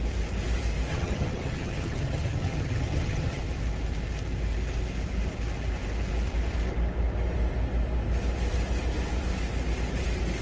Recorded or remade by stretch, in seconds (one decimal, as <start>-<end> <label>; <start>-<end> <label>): 0.0-0.9 recorded; 0.9-3.4 remade; 3.4-10.4 recorded